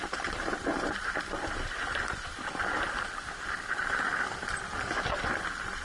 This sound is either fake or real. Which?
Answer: fake